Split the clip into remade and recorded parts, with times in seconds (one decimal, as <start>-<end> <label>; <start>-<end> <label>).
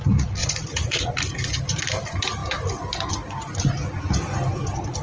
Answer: 0.0-0.4 recorded; 0.4-1.1 remade; 1.1-5.0 recorded